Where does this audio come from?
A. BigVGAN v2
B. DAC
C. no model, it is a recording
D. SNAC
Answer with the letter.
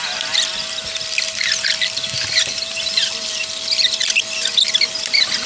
A